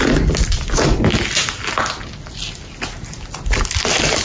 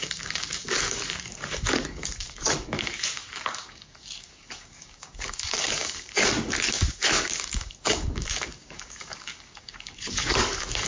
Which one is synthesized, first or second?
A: second